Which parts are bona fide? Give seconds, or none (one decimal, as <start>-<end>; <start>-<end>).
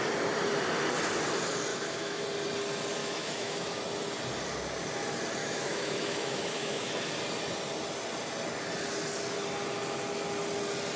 0.0-1.7; 2.2-3.0; 3.8-5.4; 6.9-11.0